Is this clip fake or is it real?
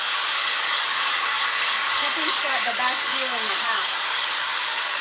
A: fake